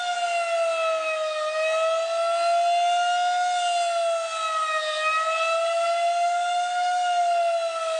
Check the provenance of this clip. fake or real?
real